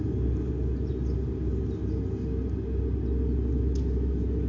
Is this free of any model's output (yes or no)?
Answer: yes